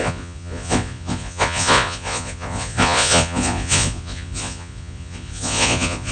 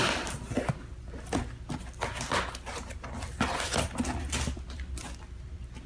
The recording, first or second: second